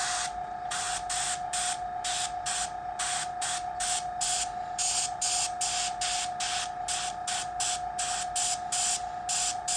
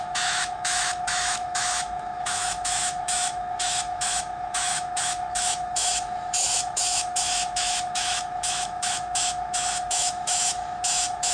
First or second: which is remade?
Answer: second